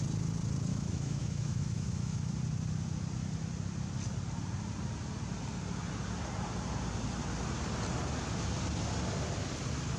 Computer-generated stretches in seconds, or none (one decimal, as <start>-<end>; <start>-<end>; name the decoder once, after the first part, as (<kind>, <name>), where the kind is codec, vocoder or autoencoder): 0.7-2.3 (autoencoder, DAC-VAE)